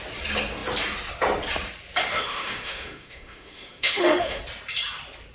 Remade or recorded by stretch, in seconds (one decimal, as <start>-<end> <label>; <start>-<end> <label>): 0.0-2.1 recorded; 2.1-4.4 remade; 4.4-5.3 recorded